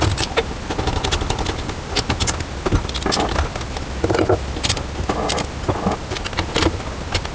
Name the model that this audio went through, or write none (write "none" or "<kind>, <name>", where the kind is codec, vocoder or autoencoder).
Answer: none